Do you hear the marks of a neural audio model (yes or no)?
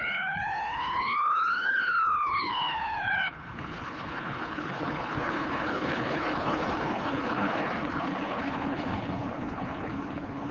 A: yes